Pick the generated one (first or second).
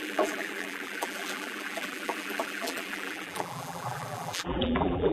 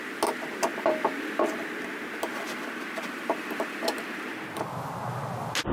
first